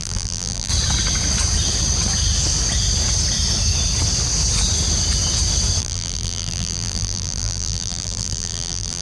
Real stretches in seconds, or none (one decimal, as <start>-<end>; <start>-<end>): 0.7-5.8

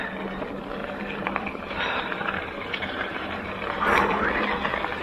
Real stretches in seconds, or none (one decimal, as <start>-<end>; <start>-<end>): 0.0-0.8; 3.8-5.0